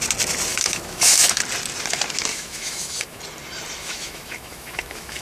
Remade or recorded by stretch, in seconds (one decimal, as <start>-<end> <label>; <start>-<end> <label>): 0.0-0.5 recorded; 0.5-1.4 remade; 1.4-2.3 recorded; 2.3-3.2 remade; 3.2-3.8 recorded; 3.8-5.2 remade